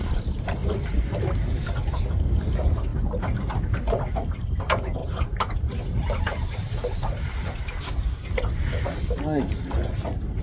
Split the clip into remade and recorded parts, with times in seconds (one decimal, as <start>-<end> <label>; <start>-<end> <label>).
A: 0.0-5.0 recorded; 5.0-7.6 remade; 7.6-10.4 recorded